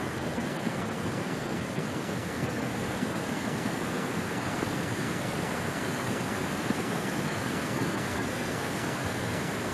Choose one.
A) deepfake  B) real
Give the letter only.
A